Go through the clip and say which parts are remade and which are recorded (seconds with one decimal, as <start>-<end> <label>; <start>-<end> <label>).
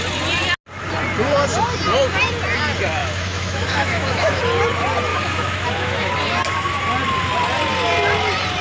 0.0-3.0 recorded; 3.0-4.4 remade; 4.4-5.1 recorded; 5.1-6.1 remade; 6.1-8.6 recorded